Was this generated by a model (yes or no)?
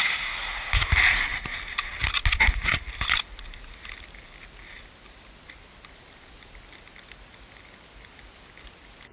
no